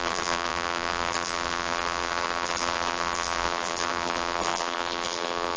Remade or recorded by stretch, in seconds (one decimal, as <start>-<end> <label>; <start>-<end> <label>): 0.0-5.6 remade